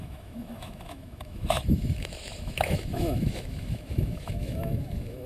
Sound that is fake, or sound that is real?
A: fake